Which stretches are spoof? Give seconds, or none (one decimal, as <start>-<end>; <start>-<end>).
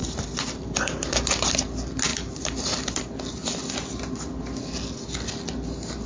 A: 0.0-1.7; 2.1-2.9